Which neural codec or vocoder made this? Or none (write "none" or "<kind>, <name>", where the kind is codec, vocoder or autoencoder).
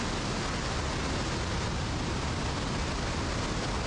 none